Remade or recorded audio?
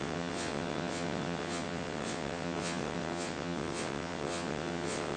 remade